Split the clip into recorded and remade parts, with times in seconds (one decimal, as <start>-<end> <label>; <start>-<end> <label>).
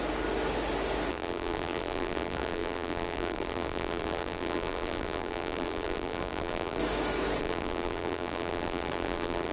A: 0.0-1.1 recorded; 1.1-6.8 remade; 6.8-7.4 recorded; 7.4-9.5 remade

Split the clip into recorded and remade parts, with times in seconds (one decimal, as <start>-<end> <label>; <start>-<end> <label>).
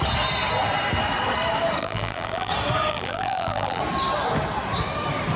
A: 0.0-1.8 recorded; 1.8-2.5 remade; 2.5-2.9 recorded; 2.9-3.8 remade; 3.8-5.4 recorded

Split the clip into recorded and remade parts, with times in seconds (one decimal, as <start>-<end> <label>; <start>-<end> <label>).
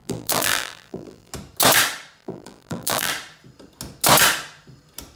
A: 0.0-1.3 remade; 1.3-2.2 recorded; 2.2-3.1 remade; 3.1-5.2 recorded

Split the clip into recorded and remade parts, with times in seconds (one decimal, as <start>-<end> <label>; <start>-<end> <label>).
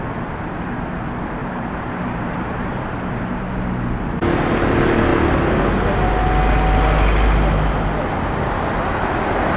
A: 0.0-1.4 recorded; 1.4-3.2 remade; 3.2-9.6 recorded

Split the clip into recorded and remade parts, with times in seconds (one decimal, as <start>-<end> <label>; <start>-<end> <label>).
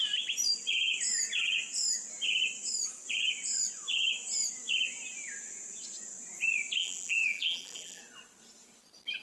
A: 0.0-6.8 recorded; 6.8-8.0 remade; 8.0-9.2 recorded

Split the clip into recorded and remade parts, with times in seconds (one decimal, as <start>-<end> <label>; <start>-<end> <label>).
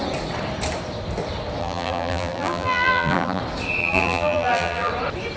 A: 0.0-1.6 recorded; 1.6-3.4 remade; 3.4-3.8 recorded; 3.8-4.9 remade; 4.9-5.4 recorded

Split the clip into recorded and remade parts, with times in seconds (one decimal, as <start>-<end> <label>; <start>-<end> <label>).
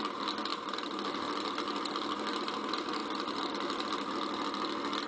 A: 0.0-0.5 recorded; 0.5-1.9 remade; 1.9-3.0 recorded; 3.0-3.5 remade; 3.5-5.1 recorded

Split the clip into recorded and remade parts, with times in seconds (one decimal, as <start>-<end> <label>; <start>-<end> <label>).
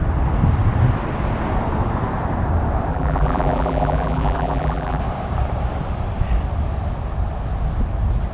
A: 0.0-2.9 recorded; 2.9-5.0 remade; 5.0-8.3 recorded